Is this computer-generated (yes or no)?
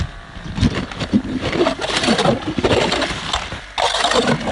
no